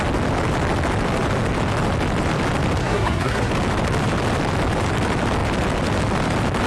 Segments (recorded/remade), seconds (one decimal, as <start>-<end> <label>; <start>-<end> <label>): 0.0-2.8 recorded; 2.8-3.5 remade; 3.5-6.7 recorded